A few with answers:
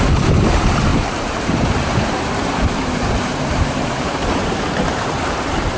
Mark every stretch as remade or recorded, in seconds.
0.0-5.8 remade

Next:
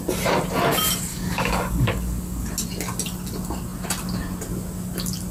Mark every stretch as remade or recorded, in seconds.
0.0-1.1 recorded; 1.1-2.5 remade; 2.5-5.3 recorded

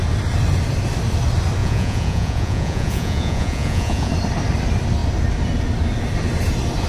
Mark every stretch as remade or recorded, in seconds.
0.0-1.6 recorded; 1.6-4.1 remade; 4.1-6.9 recorded

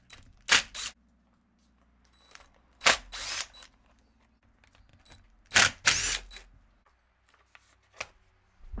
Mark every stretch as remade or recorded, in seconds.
0.0-8.8 recorded

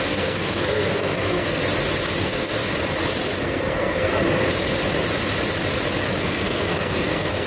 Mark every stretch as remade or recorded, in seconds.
0.0-1.6 remade; 1.6-2.2 recorded; 2.2-2.6 remade; 2.6-3.4 recorded; 3.4-4.1 remade; 4.1-6.2 recorded; 6.2-7.5 remade

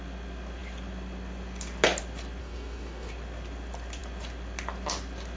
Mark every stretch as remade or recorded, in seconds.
0.0-2.4 recorded; 2.4-3.1 remade; 3.1-5.4 recorded

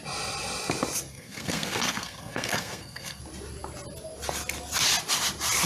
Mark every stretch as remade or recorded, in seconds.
0.0-1.1 recorded; 1.1-3.2 remade; 3.2-5.7 recorded

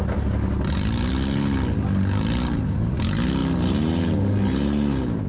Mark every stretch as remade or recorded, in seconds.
0.0-5.3 recorded